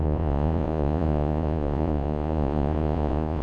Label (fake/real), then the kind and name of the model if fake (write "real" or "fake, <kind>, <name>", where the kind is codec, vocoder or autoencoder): fake, vocoder, Vocos